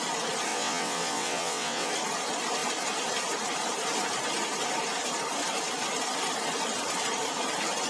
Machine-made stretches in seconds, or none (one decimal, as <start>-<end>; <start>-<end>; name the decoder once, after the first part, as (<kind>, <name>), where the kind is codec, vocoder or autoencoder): 0.5-1.9 (vocoder, WaveNeXt)